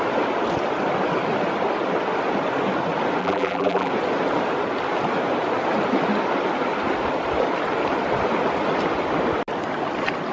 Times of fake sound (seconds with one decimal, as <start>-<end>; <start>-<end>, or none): 3.2-3.9